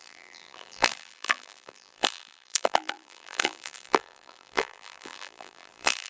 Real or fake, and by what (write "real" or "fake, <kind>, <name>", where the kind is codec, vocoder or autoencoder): fake, vocoder, BigVGAN v2